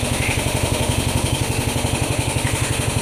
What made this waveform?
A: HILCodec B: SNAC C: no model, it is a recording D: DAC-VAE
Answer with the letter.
D